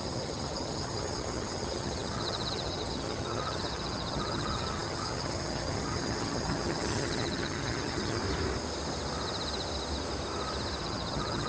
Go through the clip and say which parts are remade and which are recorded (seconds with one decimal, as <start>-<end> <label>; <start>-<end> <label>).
0.0-8.2 remade; 8.2-10.8 recorded; 10.8-11.5 remade